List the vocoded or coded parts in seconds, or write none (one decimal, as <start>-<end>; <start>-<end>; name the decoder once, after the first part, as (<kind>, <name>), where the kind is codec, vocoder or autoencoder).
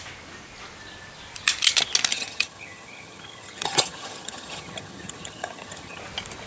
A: 2.1-6.0 (vocoder, HiFi-GAN)